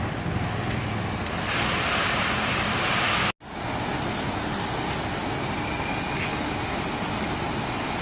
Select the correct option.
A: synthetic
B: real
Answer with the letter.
B